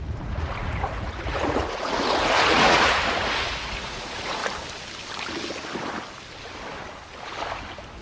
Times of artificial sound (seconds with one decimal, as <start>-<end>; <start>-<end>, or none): 0.0-4.4